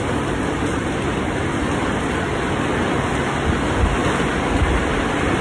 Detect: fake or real real